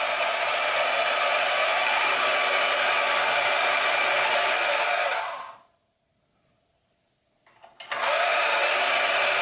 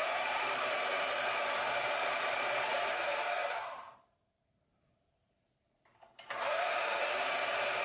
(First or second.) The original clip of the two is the first